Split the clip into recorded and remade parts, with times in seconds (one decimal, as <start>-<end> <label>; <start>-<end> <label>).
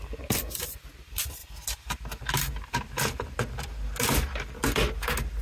0.0-5.4 recorded